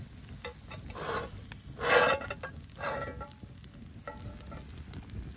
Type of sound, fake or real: real